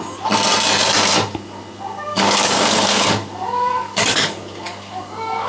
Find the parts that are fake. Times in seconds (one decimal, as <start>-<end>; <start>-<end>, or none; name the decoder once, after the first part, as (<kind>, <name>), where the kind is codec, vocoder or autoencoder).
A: 2.1-5.5 (codec, DAC)

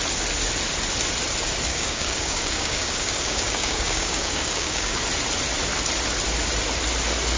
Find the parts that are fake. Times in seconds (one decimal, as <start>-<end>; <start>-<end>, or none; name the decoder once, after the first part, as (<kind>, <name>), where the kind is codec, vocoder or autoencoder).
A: 1.7-5.0 (codec, DAC)